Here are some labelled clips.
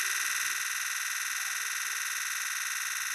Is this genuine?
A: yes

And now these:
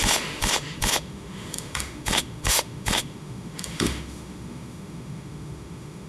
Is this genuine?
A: no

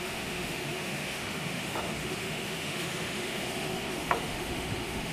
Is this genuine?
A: no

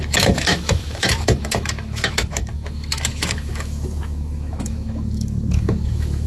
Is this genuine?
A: no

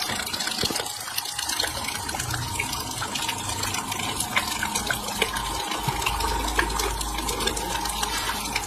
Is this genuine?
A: yes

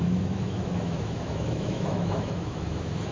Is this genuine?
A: no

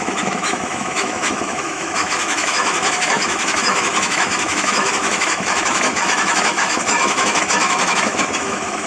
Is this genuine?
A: no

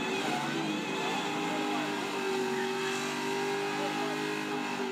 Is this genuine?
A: yes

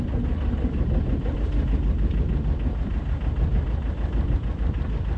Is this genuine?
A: yes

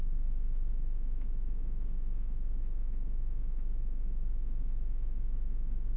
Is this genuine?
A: no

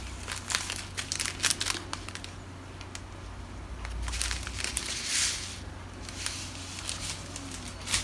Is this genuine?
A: yes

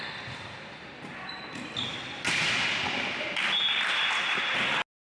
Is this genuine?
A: yes